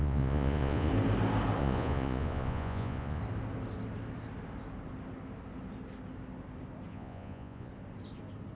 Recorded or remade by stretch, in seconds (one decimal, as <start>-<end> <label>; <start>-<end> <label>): 0.0-0.9 remade; 0.9-1.6 recorded; 1.6-3.2 remade; 3.2-6.9 recorded; 6.9-7.7 remade; 7.7-8.5 recorded